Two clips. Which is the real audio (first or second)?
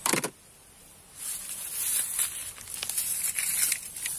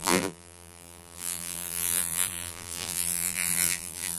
first